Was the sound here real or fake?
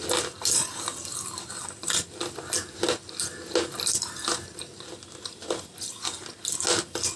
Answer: real